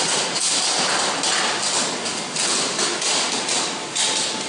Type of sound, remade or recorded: recorded